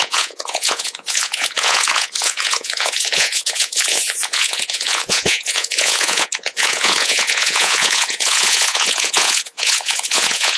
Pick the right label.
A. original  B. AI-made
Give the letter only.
B